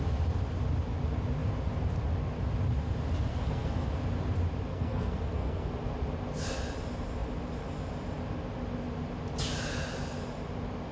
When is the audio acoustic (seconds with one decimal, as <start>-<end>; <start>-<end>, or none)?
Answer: 0.0-3.3; 3.9-4.7; 5.7-10.9